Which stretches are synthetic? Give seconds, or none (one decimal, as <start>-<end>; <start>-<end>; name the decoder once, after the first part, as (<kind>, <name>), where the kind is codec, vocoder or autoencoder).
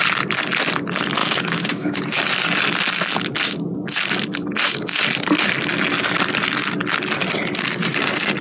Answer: 1.2-2.0 (autoencoder, DAC-VAE)